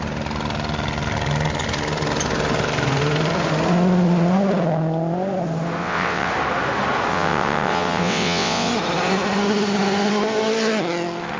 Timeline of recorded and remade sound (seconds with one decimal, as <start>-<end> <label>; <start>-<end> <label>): 0.0-5.8 recorded; 5.8-6.3 remade; 6.3-7.1 recorded; 7.1-8.7 remade; 8.7-11.4 recorded

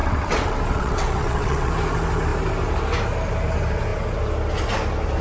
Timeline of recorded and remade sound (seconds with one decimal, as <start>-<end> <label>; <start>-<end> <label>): 0.0-1.7 remade; 1.7-5.2 recorded

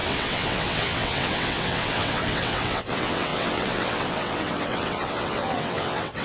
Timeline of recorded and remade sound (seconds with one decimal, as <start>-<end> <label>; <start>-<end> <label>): 0.0-6.2 remade

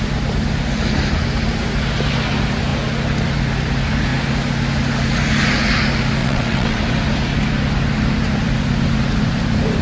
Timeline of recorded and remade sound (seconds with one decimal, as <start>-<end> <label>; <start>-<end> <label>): 0.0-6.2 recorded; 6.2-6.8 remade; 6.8-9.8 recorded

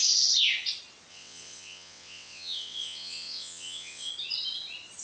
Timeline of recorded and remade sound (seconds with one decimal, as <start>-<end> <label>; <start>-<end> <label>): 0.0-1.1 recorded; 1.1-4.1 remade; 4.1-5.0 recorded